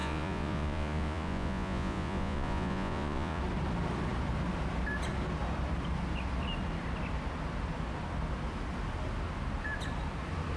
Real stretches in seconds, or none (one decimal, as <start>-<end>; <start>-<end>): 3.4-10.6